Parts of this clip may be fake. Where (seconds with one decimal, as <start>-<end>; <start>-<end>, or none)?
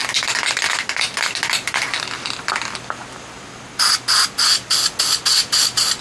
none